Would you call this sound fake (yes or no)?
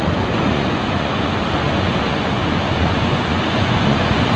yes